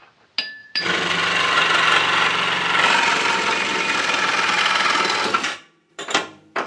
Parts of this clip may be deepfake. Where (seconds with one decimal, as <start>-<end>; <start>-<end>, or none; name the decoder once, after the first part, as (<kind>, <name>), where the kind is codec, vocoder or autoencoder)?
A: 0.6-4.6 (vocoder, BigVGAN v2); 5.9-6.7